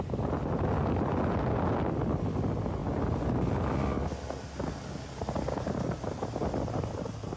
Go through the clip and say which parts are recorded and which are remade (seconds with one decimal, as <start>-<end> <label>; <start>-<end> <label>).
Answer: 0.0-7.4 recorded